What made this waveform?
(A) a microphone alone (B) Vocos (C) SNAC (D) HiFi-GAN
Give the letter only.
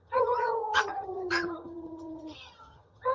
D